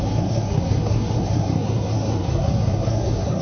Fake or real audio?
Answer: fake